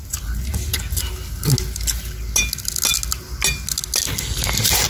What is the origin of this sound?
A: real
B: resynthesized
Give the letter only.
A